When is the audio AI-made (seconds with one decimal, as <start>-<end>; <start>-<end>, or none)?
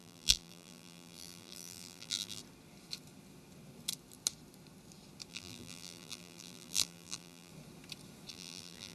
0.0-2.4; 5.3-7.5; 8.3-8.9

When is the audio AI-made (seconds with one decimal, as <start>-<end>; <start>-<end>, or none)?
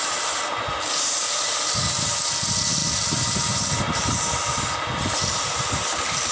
0.7-1.6; 2.8-6.3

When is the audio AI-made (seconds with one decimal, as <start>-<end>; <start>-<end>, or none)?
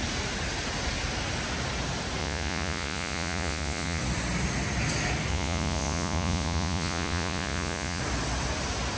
2.2-4.0; 5.3-8.0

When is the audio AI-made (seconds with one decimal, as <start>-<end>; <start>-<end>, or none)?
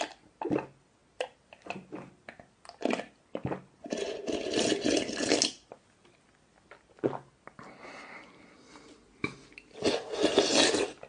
none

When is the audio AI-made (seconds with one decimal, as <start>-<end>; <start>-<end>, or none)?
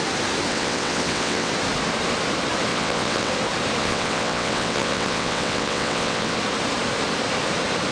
0.5-1.5; 2.7-3.3; 3.8-6.4